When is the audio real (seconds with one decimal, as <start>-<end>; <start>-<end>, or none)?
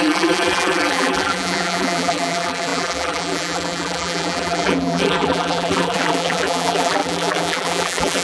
none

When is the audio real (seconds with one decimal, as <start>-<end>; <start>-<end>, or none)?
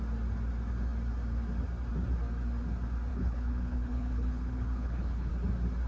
0.0-3.1; 5.3-5.9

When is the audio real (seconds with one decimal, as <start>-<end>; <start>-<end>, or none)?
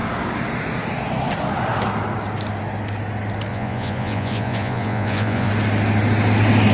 0.0-3.5; 5.5-6.7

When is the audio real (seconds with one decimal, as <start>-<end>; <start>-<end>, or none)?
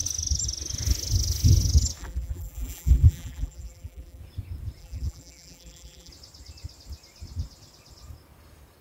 0.0-2.0; 4.2-4.8; 6.1-8.8